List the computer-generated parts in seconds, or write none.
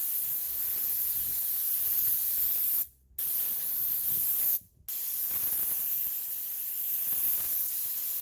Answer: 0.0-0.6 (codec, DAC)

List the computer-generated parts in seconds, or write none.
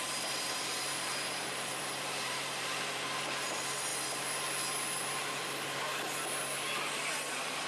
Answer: 0.0-3.9 (vocoder, BigVGAN v2); 6.9-7.7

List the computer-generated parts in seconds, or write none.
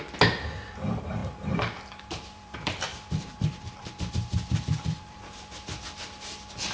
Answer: 1.2-5.2 (vocoder, BigVGAN v2)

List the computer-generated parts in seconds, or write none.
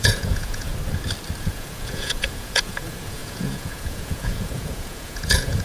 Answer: 0.0-0.7 (vocoder, Vocos); 1.4-5.6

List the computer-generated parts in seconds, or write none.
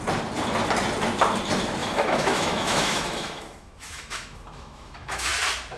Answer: 1.8-5.3 (autoencoder, DAC-VAE)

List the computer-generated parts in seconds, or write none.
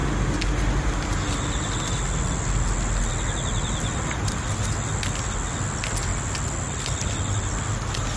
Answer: none